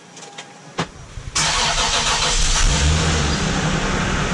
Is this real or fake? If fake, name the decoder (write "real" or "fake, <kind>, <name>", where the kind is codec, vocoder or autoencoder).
real